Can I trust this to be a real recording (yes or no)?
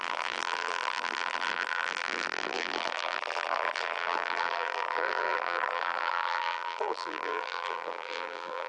no